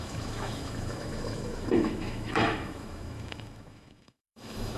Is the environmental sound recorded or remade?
remade